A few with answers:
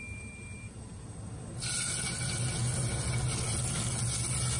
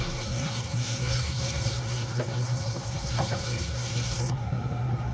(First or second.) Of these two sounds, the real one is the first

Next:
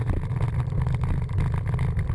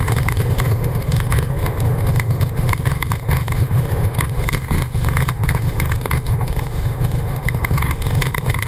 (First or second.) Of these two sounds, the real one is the first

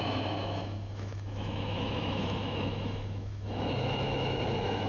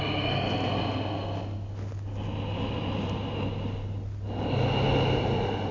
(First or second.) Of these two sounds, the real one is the second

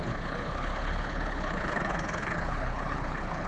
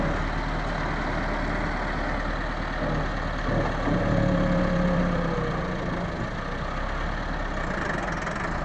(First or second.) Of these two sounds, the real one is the second